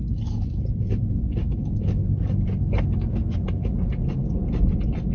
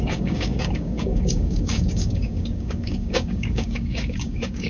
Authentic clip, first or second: first